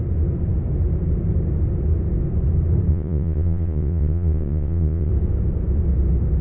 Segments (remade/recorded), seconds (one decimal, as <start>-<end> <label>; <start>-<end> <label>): 0.0-2.9 recorded; 2.9-5.1 remade; 5.1-6.4 recorded